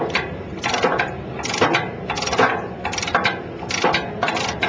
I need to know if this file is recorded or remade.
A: recorded